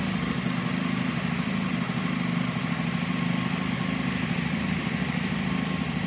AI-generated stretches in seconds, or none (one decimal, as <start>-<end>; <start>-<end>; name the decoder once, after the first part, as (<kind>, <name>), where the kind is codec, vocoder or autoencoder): none